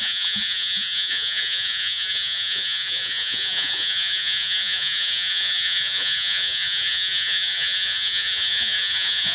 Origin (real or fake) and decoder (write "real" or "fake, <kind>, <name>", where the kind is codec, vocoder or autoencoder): fake, vocoder, Vocos